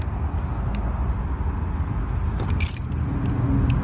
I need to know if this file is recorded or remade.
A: recorded